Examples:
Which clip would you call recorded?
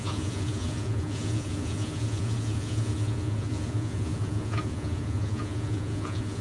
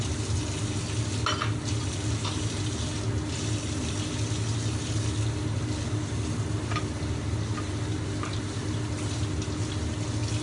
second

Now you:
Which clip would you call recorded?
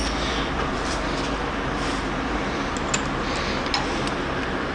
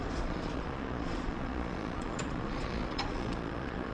first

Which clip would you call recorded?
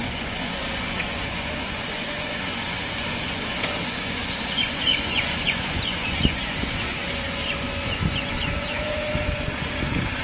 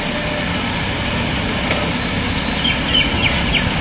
second